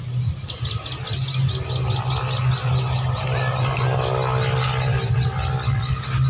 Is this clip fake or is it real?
real